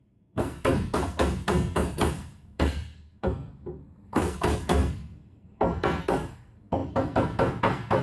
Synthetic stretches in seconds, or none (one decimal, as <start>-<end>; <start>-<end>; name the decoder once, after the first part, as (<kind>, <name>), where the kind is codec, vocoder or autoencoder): 0.0-8.0 (codec, SNAC)